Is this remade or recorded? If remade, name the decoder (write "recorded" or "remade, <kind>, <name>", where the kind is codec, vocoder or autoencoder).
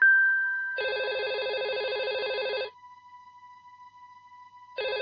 recorded